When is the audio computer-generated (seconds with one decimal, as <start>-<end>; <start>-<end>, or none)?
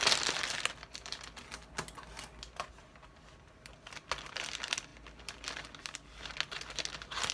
none